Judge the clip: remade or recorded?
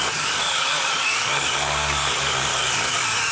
remade